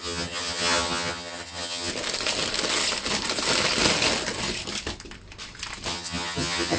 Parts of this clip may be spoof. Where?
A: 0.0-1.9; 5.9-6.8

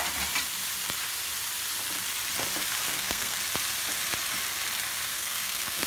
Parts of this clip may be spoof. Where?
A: 2.9-3.4; 5.1-5.9

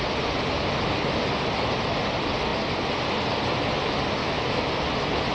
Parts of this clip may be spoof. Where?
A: 4.2-4.7

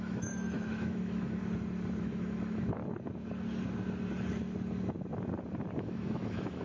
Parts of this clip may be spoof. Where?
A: 0.0-1.4; 2.0-2.8; 5.8-6.6

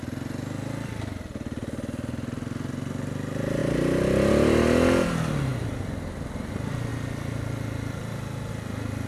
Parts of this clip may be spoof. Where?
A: none

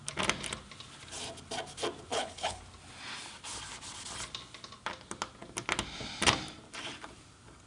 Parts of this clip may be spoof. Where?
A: 2.1-2.6